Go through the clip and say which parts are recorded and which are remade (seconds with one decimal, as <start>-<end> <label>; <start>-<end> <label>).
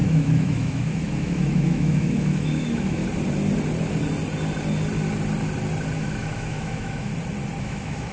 0.0-3.0 remade; 3.0-6.0 recorded; 6.0-7.1 remade; 7.1-7.6 recorded; 7.6-8.1 remade